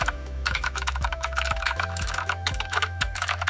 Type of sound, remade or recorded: remade